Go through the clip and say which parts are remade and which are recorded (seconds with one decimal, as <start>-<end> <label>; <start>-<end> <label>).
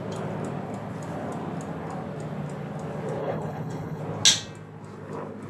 0.0-3.2 recorded; 3.2-4.0 remade; 4.0-5.5 recorded